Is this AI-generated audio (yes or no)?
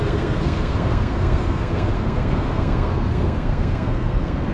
yes